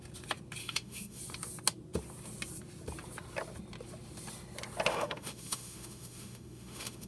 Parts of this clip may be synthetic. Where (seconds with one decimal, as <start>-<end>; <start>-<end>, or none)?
0.6-1.2; 4.9-7.1